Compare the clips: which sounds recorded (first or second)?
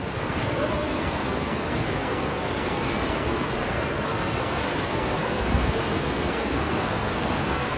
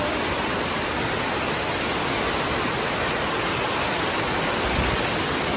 second